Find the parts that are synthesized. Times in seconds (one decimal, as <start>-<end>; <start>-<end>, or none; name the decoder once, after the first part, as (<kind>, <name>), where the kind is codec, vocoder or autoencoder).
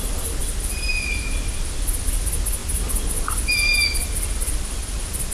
none